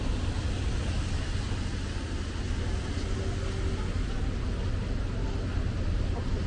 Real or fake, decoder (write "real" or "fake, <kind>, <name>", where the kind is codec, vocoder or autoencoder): real